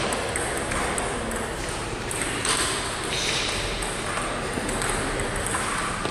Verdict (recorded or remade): recorded